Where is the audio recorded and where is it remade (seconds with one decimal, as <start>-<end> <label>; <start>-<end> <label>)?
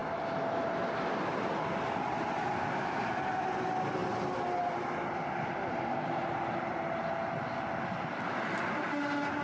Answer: 0.0-9.4 recorded